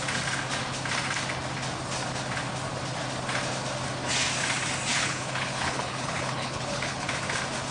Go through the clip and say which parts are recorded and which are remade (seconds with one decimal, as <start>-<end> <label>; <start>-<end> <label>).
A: 0.0-4.9 recorded; 4.9-7.1 remade; 7.1-7.7 recorded